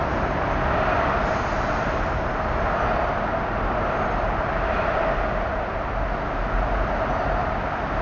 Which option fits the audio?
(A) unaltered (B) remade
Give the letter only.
A